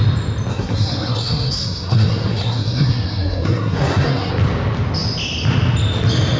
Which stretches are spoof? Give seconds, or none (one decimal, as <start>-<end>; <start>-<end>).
0.5-4.3